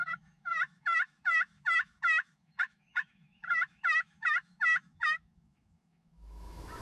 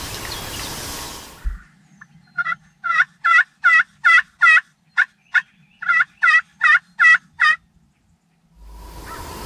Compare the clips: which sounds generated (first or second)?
first